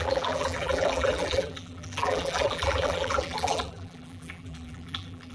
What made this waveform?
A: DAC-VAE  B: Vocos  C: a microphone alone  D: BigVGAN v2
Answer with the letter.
D